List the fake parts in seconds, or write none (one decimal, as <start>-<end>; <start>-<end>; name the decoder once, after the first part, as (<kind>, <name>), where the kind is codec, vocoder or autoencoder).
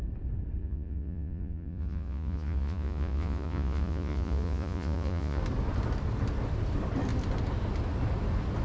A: 0.6-5.4 (vocoder, Vocos)